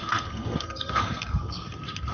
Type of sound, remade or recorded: remade